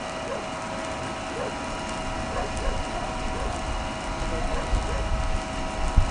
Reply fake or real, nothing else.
real